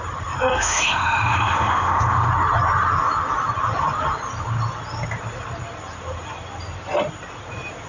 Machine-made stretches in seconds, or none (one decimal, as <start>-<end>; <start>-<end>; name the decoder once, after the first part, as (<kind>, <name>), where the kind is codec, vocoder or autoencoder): 0.5-2.3 (autoencoder, DAC-VAE)

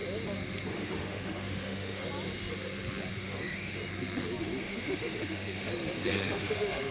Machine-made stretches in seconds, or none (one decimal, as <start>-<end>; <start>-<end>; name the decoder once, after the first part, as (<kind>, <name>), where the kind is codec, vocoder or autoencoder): 0.7-2.0 (autoencoder, DAC-VAE); 3.1-3.8; 4.4-6.9

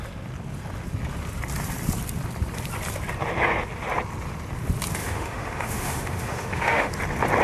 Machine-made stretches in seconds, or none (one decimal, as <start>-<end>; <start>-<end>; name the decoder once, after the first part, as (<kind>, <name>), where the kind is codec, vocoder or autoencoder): 5.0-6.9 (autoencoder, DAC-VAE)

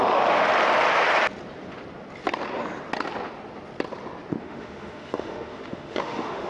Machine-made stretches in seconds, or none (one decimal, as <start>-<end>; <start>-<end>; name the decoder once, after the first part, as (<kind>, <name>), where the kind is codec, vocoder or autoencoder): 0.0-0.5 (autoencoder, DAC-VAE); 4.4-6.5

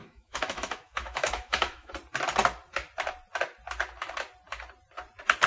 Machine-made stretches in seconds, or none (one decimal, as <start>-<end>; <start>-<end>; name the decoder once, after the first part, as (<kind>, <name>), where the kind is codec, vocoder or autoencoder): 0.0-1.9 (autoencoder, DAC-VAE)

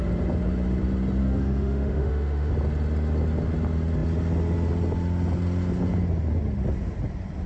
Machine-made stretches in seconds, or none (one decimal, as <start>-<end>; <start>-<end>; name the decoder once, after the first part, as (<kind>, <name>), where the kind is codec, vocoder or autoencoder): 1.2-2.5 (autoencoder, DAC-VAE)

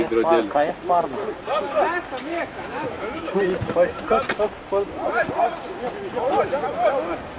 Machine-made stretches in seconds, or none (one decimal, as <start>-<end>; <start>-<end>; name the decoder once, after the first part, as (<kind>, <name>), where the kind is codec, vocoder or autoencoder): 2.3-3.4 (autoencoder, DAC-VAE)